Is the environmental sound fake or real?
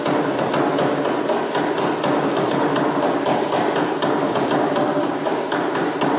real